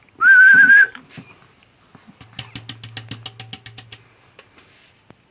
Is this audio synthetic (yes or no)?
no